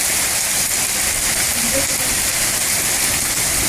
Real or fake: real